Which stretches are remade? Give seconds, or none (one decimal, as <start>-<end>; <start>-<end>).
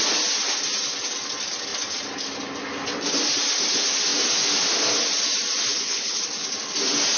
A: 5.7-6.2